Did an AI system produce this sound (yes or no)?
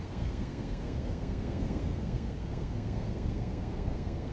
yes